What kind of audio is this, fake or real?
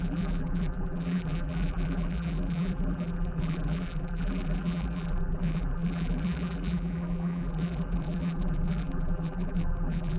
fake